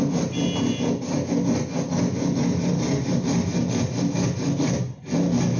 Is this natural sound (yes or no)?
yes